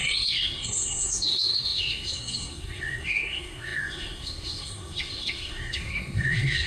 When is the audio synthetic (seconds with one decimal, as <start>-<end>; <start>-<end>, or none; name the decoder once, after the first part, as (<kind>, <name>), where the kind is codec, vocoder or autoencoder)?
0.0-6.7 (codec, SNAC)